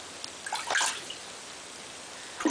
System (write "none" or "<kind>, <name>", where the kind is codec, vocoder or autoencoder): none